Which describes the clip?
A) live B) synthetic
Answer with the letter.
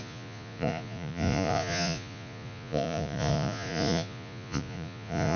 B